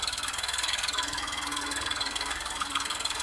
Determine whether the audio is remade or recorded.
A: remade